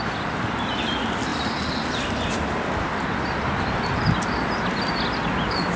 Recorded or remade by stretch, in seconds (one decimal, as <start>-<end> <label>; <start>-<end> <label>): 0.0-5.8 recorded